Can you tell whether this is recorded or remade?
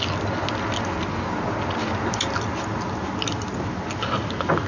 recorded